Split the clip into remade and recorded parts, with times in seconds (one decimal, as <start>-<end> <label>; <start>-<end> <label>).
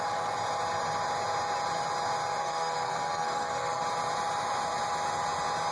0.0-2.4 recorded; 2.4-3.8 remade; 3.8-5.7 recorded